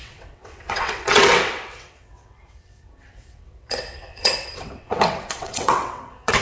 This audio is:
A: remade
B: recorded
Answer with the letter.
A